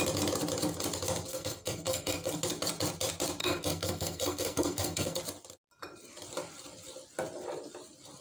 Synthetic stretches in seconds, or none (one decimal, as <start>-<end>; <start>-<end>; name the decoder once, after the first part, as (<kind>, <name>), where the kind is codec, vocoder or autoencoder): 1.3-2.4 (codec, SNAC); 3.4-5.2